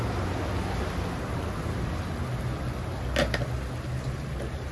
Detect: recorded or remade recorded